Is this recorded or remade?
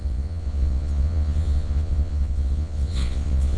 remade